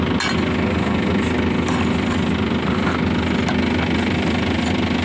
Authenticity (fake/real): real